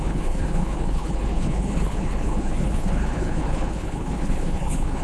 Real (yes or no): no